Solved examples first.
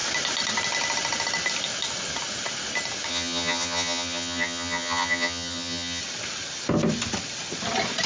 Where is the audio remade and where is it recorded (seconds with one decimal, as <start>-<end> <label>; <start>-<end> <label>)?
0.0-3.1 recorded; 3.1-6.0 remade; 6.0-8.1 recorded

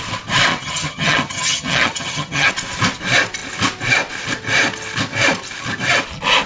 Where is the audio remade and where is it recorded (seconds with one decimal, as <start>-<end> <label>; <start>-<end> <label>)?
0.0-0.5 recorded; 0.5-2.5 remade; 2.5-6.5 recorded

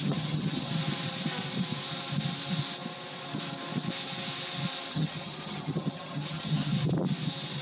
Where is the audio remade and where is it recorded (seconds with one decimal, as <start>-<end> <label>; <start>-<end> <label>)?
0.0-0.7 remade; 0.7-4.9 recorded; 4.9-6.7 remade; 6.7-7.6 recorded

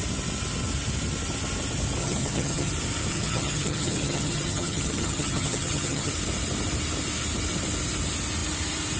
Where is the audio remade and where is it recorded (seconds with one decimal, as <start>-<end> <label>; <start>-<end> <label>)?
0.0-2.0 recorded; 2.0-2.7 remade; 2.7-3.1 recorded; 3.1-6.1 remade; 6.1-9.0 recorded